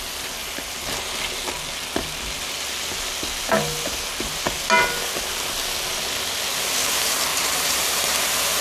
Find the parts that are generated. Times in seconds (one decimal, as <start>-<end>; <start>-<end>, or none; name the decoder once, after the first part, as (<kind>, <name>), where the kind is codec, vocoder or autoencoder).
0.4-1.1 (vocoder, BigVGAN v2); 7.3-8.2